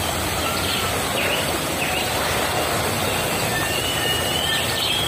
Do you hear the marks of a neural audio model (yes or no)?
no